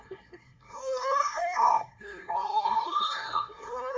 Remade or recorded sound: remade